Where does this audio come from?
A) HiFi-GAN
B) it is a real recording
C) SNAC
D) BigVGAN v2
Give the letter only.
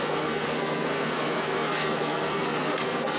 C